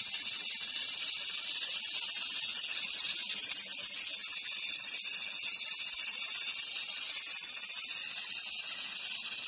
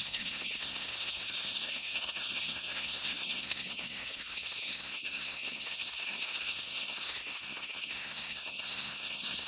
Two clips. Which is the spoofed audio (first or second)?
second